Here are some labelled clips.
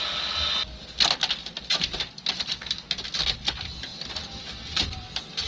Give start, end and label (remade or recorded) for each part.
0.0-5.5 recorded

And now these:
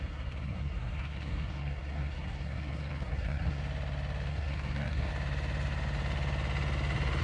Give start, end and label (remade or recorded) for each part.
0.0-3.6 remade; 3.6-4.3 recorded; 4.3-5.1 remade; 5.1-7.2 recorded

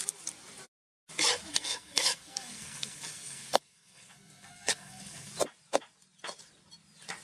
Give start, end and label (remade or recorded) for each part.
0.0-1.5 recorded; 1.5-5.3 remade; 5.3-7.2 recorded